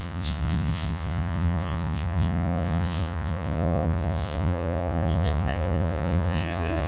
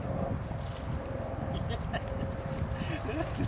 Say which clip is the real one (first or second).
second